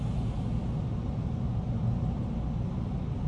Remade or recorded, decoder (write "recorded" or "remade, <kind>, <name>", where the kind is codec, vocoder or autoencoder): recorded